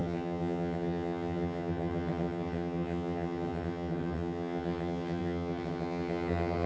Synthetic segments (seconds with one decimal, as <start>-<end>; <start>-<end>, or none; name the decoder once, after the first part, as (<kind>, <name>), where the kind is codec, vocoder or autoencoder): 0.0-6.7 (vocoder, HiFi-GAN)